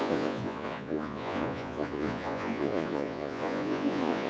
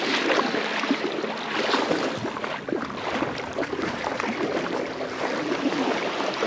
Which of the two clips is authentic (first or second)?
second